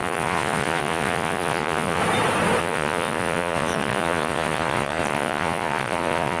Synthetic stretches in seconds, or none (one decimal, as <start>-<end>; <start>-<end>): 0.0-2.0; 2.6-6.4